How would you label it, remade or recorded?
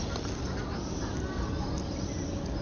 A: recorded